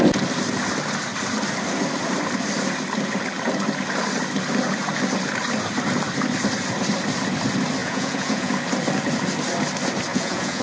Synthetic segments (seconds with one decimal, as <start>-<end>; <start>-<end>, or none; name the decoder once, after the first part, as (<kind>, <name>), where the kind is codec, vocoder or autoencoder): 7.8-8.5 (vocoder, Vocos); 10.1-10.6